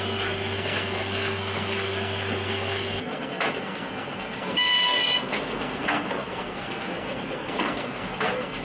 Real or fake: fake